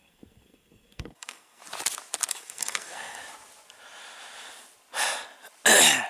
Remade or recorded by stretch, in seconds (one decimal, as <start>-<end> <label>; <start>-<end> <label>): 0.0-1.6 remade; 1.6-2.3 recorded; 2.3-3.2 remade; 3.2-6.1 recorded